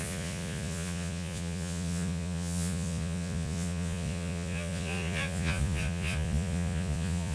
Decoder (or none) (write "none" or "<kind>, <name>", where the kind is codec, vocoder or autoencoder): vocoder, Vocos